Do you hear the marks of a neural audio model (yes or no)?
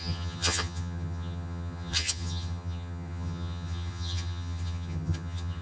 yes